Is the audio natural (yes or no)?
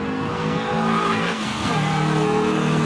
no